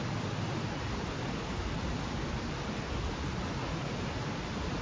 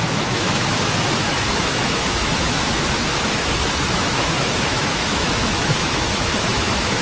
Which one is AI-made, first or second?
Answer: second